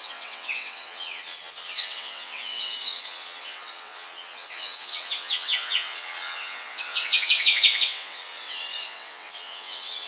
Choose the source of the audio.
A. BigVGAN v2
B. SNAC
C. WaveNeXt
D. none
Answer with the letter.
C